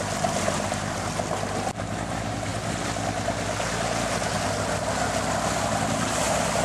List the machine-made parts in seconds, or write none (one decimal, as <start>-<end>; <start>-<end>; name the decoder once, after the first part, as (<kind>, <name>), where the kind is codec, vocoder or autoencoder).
none